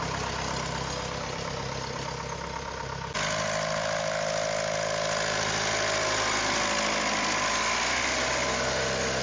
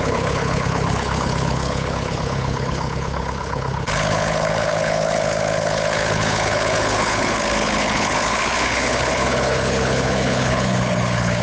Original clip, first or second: first